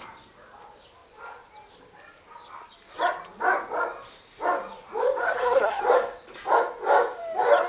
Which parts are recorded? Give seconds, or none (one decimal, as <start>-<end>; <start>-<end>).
0.0-5.2; 5.8-7.7